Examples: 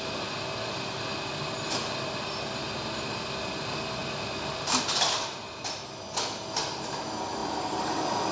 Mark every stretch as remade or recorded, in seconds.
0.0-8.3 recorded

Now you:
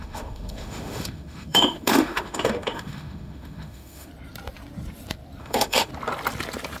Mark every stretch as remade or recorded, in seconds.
0.0-4.1 remade; 4.1-5.4 recorded; 5.4-5.9 remade; 5.9-6.8 recorded

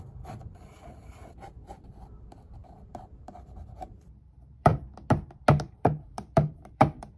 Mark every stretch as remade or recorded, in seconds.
0.0-4.7 remade; 4.7-5.8 recorded; 5.8-7.2 remade